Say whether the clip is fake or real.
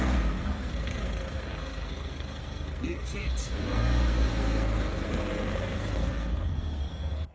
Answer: fake